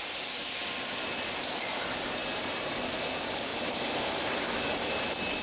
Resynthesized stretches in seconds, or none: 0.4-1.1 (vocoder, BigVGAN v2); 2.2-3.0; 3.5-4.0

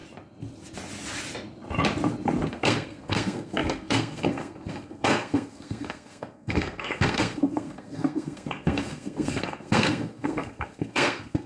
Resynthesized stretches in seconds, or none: 2.5-11.5 (codec, SNAC)

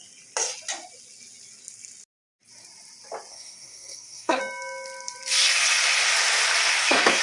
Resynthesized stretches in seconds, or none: 3.3-4.4 (codec, SNAC); 6.7-7.2